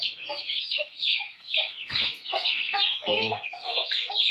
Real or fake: fake